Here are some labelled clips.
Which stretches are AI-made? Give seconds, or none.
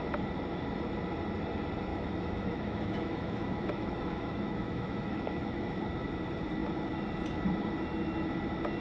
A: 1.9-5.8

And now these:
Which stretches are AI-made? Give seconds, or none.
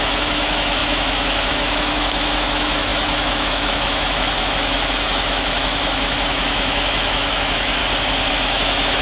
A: 0.0-7.8; 8.3-9.0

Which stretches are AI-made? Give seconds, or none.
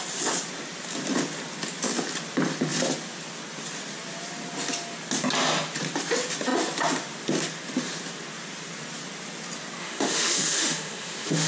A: 9.8-11.5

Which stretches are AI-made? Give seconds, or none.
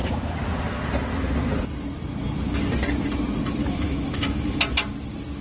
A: 3.6-4.6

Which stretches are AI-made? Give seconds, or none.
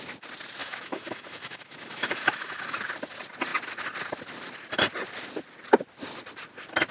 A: 0.6-2.8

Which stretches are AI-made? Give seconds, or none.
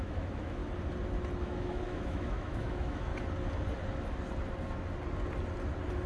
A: 0.0-0.6; 1.4-3.1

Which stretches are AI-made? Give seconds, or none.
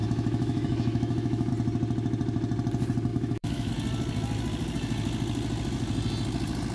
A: 0.0-1.5; 3.1-3.7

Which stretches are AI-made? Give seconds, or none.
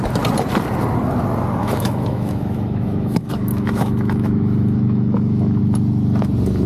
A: 1.6-5.6